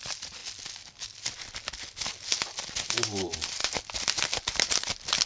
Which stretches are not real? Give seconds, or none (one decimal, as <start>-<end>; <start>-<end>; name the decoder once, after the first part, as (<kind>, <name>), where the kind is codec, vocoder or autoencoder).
0.0-0.4 (vocoder, BigVGAN v2); 2.7-3.6; 4.3-5.3